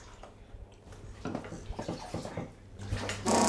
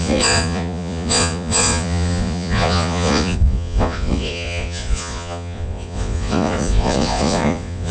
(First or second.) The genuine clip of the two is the first